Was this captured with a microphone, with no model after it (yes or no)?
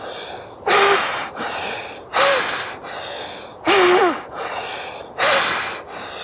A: yes